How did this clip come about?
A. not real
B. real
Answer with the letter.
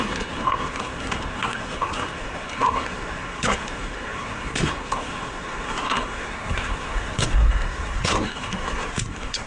A